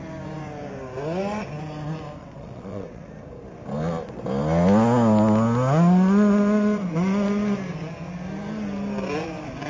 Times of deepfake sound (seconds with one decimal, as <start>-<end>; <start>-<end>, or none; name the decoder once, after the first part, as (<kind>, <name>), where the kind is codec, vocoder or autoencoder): 2.2-3.1 (vocoder, WaveNeXt)